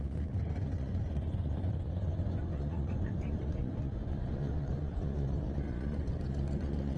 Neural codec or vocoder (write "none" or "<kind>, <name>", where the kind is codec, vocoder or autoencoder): vocoder, Vocos